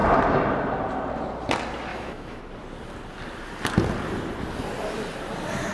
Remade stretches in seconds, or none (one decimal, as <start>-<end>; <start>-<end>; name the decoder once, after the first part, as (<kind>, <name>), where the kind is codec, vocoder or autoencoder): 1.9-2.4 (autoencoder, DAC-VAE)